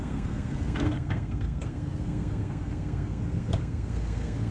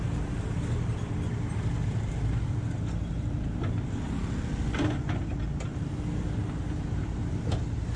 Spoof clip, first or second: first